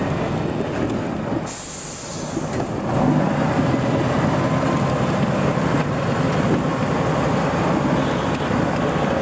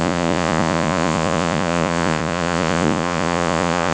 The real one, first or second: first